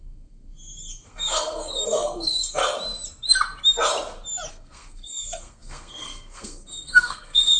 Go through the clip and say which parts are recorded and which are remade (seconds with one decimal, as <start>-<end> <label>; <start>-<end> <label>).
0.0-2.6 remade; 2.6-4.5 recorded; 4.5-7.6 remade